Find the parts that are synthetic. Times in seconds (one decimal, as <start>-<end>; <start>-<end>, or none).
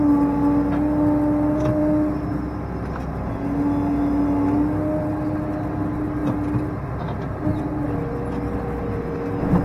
none